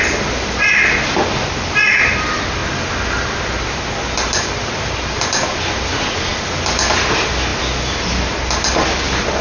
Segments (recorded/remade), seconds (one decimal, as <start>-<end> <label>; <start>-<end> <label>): 0.0-9.4 recorded